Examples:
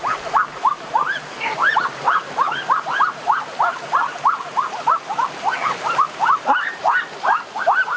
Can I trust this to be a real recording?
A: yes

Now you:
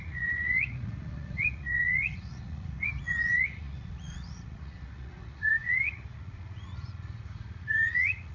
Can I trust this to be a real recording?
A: no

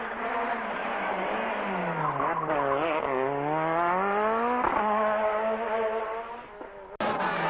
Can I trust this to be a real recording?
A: yes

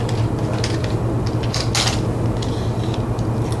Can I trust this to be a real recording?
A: yes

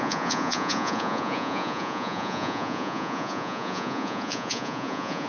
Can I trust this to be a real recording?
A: no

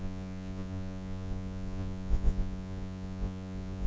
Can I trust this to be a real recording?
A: no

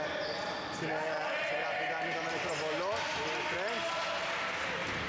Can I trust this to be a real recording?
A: yes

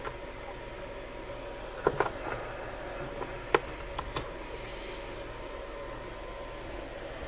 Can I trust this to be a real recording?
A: yes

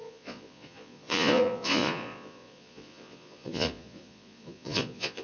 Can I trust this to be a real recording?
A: no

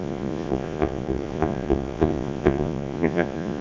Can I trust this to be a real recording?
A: no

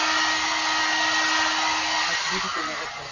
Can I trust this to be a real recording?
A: yes